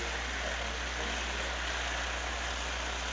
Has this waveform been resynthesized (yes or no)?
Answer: no